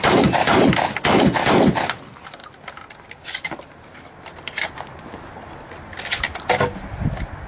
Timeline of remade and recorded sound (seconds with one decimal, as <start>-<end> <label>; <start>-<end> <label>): 0.0-7.5 recorded